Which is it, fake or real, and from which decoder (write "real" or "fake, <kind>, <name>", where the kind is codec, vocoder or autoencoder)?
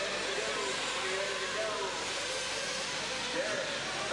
real